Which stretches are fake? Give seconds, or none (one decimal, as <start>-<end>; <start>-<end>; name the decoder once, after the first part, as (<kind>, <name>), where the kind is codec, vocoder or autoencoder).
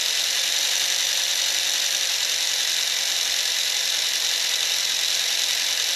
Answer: none